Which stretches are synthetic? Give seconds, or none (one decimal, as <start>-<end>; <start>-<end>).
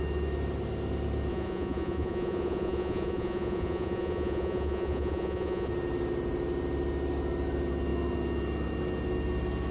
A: 1.3-5.7